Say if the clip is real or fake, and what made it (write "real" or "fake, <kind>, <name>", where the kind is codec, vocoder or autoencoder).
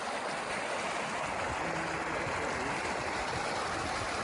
real